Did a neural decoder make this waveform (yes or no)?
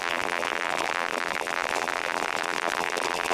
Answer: yes